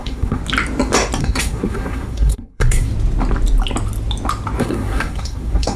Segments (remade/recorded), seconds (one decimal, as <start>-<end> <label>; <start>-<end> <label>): 0.0-0.4 remade; 0.4-1.2 recorded; 1.2-2.9 remade; 2.9-4.6 recorded; 4.6-5.8 remade

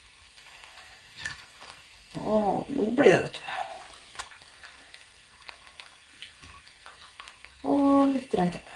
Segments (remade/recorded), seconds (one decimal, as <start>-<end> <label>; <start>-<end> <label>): 0.0-3.7 remade; 3.7-4.2 recorded; 4.2-8.8 remade

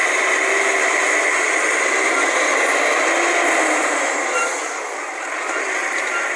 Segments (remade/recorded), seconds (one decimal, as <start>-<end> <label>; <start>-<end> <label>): 0.0-6.4 recorded

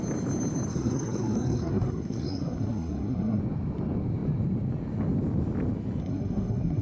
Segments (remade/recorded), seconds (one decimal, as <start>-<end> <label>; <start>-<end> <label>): 0.0-0.7 recorded; 0.7-3.4 remade; 3.4-6.0 recorded; 6.0-6.8 remade